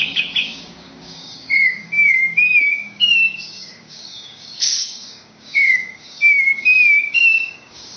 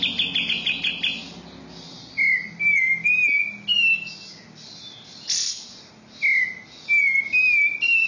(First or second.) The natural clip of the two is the second